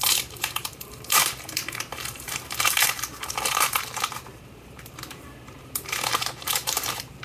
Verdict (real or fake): fake